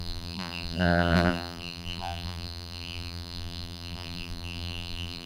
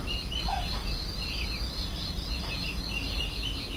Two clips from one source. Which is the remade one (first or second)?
first